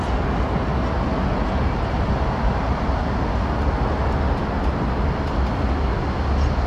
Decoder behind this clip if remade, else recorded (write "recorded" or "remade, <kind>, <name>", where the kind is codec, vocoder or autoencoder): recorded